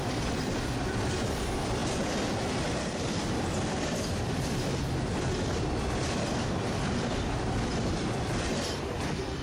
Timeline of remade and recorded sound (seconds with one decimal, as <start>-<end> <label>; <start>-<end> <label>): 0.0-9.4 remade